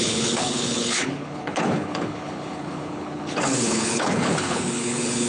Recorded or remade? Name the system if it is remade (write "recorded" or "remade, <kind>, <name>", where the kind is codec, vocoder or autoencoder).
remade, codec, HILCodec